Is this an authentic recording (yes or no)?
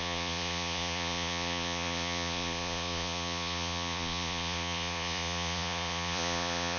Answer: no